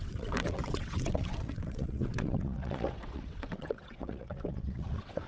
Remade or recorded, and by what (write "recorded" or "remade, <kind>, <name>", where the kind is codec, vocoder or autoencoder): remade, vocoder, WaveNeXt